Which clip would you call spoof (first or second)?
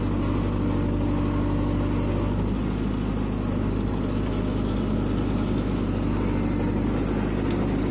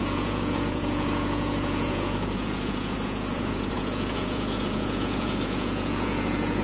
second